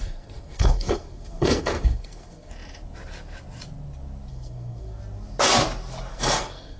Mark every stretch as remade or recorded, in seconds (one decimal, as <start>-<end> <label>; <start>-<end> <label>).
0.0-2.5 remade; 2.5-4.3 recorded; 4.3-5.0 remade; 5.0-6.1 recorded; 6.1-6.8 remade